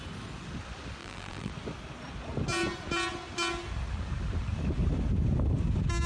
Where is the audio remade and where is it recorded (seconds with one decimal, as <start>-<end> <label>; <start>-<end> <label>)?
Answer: 0.0-1.0 recorded; 1.0-1.5 remade; 1.5-6.1 recorded